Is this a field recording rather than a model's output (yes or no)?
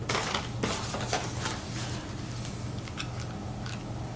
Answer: yes